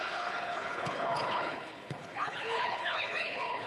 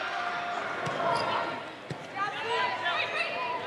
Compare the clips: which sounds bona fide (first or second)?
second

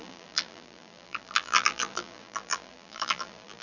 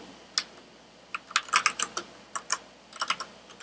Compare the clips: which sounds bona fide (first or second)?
second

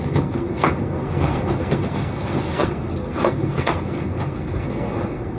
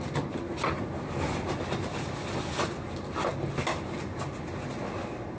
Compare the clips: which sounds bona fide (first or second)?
second